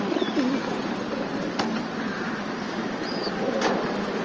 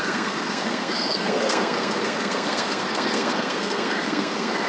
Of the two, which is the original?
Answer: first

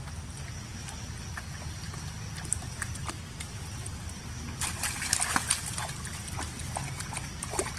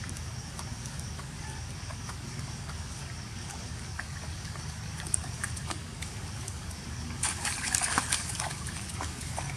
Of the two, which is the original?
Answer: first